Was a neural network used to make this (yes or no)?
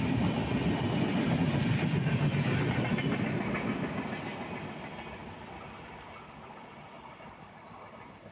no